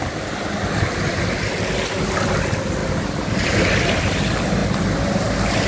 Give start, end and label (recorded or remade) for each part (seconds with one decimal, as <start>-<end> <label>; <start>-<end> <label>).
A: 0.0-5.7 recorded

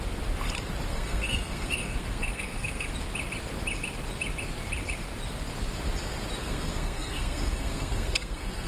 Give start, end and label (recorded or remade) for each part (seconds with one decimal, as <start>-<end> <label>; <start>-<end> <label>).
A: 0.0-0.9 recorded; 0.9-2.9 remade; 2.9-6.4 recorded; 6.4-8.7 remade

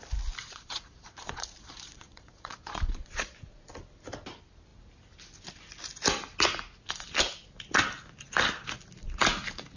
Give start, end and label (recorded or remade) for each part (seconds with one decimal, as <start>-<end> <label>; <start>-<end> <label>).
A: 0.0-0.4 recorded; 0.4-3.3 remade; 3.3-9.8 recorded

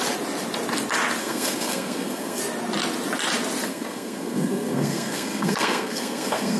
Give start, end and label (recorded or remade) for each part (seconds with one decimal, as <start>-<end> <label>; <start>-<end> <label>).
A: 0.0-1.2 recorded; 1.2-2.4 remade; 2.4-3.7 recorded; 3.7-6.6 remade

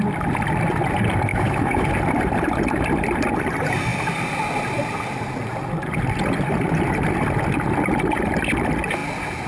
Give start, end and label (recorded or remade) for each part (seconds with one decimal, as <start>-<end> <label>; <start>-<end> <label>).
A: 0.0-1.3 recorded; 1.3-1.9 remade; 1.9-9.5 recorded

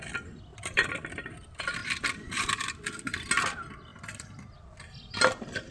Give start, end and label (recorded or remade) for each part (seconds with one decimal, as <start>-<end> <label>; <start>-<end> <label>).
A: 0.0-0.5 recorded; 0.5-1.1 remade; 1.1-1.8 recorded; 1.8-2.5 remade; 2.5-3.9 recorded; 3.9-4.5 remade; 4.5-5.7 recorded